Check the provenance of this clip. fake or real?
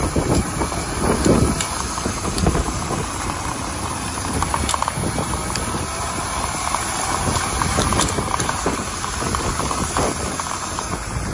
real